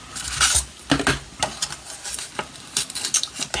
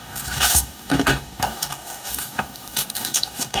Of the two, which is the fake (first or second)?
second